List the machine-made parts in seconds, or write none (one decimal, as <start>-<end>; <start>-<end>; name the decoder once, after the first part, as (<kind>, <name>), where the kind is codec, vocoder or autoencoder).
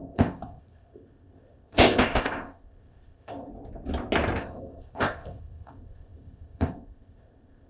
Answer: 0.0-3.5 (codec, ZipCodec); 4.4-7.7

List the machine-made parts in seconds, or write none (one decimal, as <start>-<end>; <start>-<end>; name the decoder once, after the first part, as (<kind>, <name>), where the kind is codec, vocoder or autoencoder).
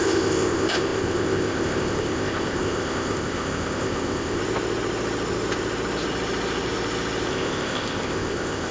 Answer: 0.0-4.4 (codec, ZipCodec); 7.3-8.7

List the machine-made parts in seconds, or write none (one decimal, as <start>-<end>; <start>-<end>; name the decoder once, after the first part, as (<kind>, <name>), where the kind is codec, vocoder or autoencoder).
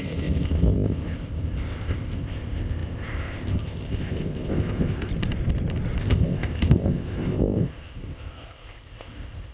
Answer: 0.0-5.1 (codec, ZipCodec); 6.0-9.5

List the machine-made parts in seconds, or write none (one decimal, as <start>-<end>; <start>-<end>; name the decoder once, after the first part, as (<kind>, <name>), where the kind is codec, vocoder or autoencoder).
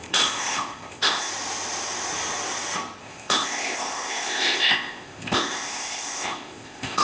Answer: 0.0-1.3 (codec, ZipCodec); 3.0-7.0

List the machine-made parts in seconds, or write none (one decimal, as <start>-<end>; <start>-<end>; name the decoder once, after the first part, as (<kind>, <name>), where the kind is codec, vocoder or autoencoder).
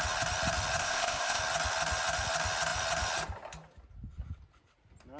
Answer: 0.8-1.4 (codec, ZipCodec)